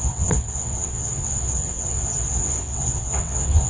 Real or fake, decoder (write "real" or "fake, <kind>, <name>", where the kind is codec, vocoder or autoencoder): fake, vocoder, WaveNeXt